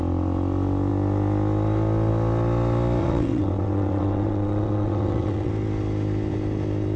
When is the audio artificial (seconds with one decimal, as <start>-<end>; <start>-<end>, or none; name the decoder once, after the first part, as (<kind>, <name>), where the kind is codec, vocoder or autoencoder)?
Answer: 3.0-5.5 (vocoder, WaveNeXt)